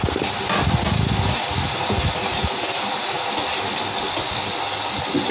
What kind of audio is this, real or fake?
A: real